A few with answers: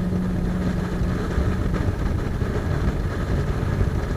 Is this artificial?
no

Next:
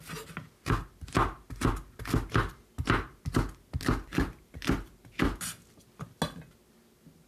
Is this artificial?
no